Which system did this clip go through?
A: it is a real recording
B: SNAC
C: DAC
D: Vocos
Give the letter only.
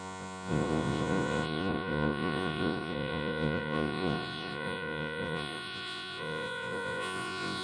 D